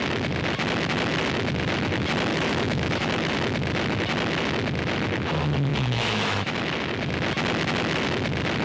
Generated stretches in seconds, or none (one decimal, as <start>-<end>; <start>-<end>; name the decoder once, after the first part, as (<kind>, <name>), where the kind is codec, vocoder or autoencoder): 2.3-3.3 (autoencoder, DAC-VAE); 5.7-6.6